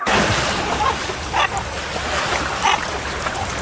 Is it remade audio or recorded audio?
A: recorded